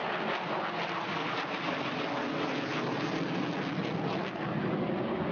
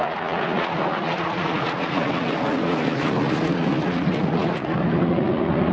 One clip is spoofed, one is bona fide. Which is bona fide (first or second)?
first